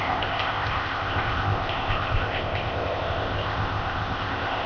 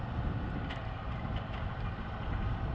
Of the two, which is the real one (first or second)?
second